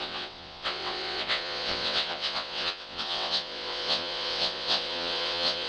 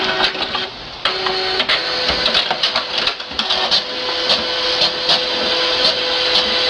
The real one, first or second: second